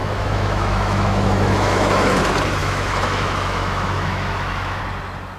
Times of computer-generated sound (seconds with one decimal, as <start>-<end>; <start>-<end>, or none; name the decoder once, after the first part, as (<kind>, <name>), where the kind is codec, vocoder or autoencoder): 0.0-2.2 (autoencoder, DAC-VAE); 2.6-4.8